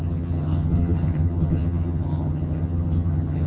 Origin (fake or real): fake